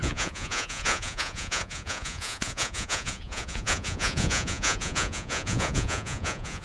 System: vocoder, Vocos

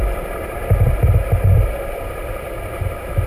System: vocoder, BigVGAN v2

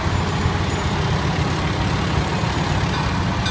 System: none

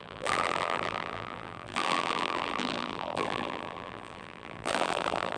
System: vocoder, BigVGAN v2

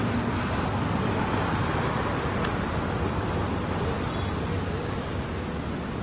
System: none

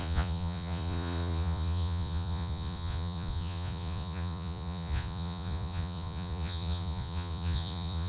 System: vocoder, Vocos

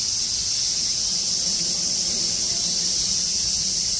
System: none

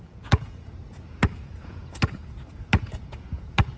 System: vocoder, Vocos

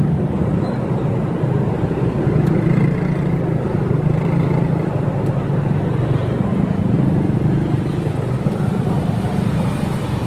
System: none